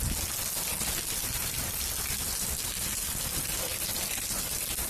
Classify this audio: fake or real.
real